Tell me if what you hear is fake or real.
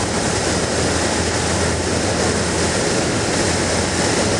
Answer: real